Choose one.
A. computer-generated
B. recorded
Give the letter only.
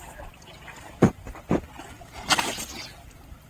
B